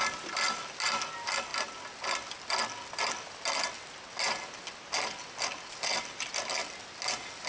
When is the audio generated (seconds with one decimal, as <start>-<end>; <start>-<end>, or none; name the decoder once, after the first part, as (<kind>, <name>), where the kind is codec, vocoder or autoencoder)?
none